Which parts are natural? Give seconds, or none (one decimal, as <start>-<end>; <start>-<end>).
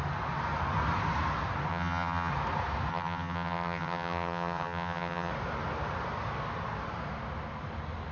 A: 0.0-1.7; 2.3-2.9; 5.3-8.1